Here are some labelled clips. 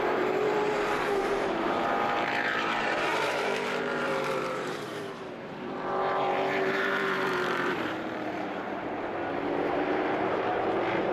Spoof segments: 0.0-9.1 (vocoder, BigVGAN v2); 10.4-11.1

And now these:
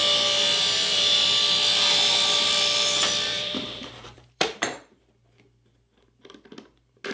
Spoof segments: 3.3-5.0 (vocoder, BigVGAN v2)

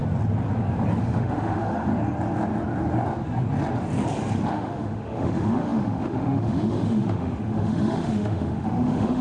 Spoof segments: 1.0-1.9 (autoencoder, DAC-VAE); 4.5-9.2

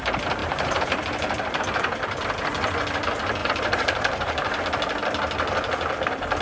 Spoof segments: 0.4-1.6 (vocoder, BigVGAN v2); 3.4-4.6